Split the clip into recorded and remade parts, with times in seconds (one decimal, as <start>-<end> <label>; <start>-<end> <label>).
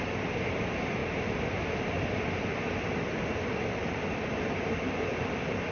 0.0-5.7 recorded